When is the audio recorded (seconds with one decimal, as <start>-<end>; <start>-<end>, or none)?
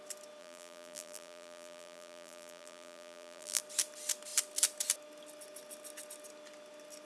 0.0-0.4; 3.6-7.1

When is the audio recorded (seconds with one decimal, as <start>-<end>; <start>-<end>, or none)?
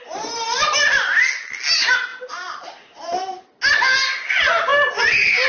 0.0-2.1; 3.4-4.7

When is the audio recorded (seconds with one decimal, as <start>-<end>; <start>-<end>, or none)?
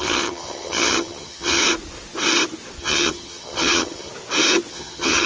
1.6-2.8; 4.1-4.7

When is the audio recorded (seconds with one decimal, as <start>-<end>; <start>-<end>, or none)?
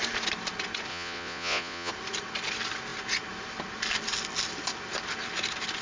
0.0-0.9; 1.9-5.8